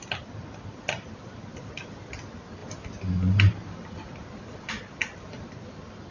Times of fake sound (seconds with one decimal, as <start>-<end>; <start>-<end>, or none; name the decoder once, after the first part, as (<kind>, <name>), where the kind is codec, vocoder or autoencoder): none